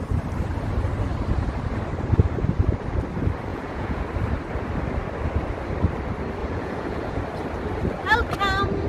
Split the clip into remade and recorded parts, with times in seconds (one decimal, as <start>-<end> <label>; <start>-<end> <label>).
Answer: 0.0-3.5 recorded; 3.5-4.0 remade; 4.0-6.4 recorded; 6.4-7.2 remade; 7.2-8.9 recorded